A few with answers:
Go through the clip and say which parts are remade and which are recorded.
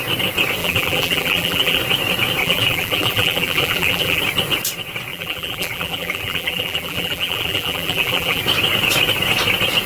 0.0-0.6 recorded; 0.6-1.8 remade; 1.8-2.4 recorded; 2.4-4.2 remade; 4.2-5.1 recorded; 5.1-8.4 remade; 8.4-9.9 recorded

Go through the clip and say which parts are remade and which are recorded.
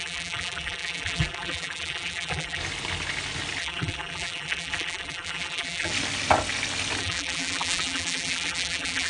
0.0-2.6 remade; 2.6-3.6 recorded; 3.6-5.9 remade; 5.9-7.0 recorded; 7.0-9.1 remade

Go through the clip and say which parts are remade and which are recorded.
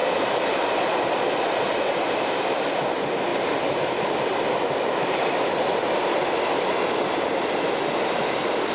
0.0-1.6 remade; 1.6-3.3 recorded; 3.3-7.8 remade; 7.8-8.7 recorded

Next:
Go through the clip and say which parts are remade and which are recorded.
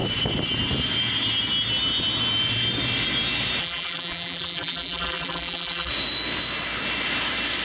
0.0-3.6 recorded; 3.6-5.9 remade; 5.9-7.6 recorded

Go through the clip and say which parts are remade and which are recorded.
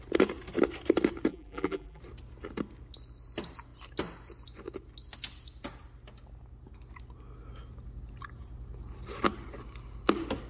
0.0-1.3 recorded; 1.3-2.0 remade; 2.0-10.5 recorded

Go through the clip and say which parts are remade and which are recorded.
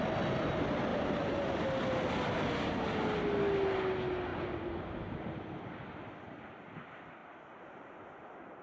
0.0-0.9 recorded; 0.9-1.5 remade; 1.5-4.3 recorded; 4.3-5.2 remade; 5.2-7.2 recorded; 7.2-7.9 remade; 7.9-8.6 recorded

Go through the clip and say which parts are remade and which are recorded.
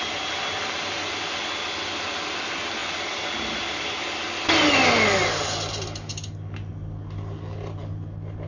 0.0-8.5 recorded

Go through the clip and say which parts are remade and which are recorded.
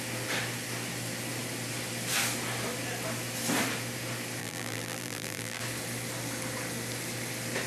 0.0-4.4 recorded; 4.4-5.6 remade; 5.6-7.7 recorded